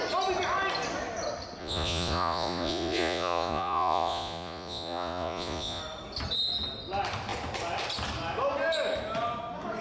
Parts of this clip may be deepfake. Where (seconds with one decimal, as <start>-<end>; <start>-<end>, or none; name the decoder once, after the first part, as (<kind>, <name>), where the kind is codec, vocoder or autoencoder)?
1.6-5.8 (vocoder, Vocos)